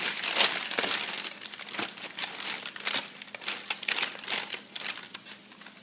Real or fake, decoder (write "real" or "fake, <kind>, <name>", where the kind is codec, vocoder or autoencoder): real